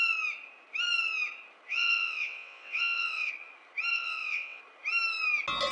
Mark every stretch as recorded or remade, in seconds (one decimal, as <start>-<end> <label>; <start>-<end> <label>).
0.0-1.7 recorded; 1.7-3.3 remade; 3.3-3.9 recorded; 3.9-4.6 remade; 4.6-5.7 recorded

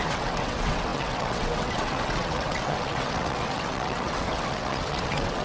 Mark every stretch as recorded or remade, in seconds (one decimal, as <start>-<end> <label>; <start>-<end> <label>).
0.0-5.4 remade

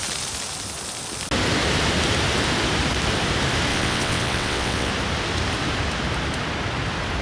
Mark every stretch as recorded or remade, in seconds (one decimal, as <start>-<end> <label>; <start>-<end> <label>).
0.0-3.7 recorded; 3.7-4.9 remade; 4.9-7.2 recorded